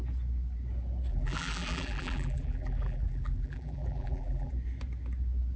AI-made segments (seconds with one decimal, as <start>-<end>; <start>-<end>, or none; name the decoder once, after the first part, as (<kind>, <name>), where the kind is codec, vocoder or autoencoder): 1.1-4.5 (vocoder, BigVGAN v2)